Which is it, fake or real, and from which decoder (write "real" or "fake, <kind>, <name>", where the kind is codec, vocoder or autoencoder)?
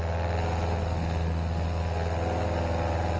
real